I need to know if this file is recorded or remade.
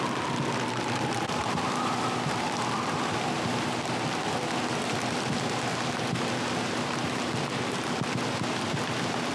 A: recorded